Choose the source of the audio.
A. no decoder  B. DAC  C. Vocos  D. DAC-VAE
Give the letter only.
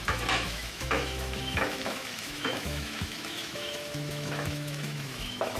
D